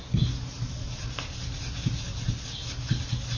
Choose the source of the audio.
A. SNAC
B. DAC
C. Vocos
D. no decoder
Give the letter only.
D